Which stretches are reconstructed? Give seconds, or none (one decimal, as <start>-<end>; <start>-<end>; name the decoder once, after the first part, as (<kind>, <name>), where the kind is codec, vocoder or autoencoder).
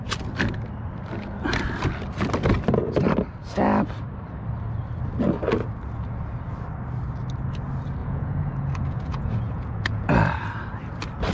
8.0-10.1 (vocoder, Vocos)